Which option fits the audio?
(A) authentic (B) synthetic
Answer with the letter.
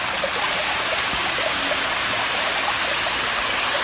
A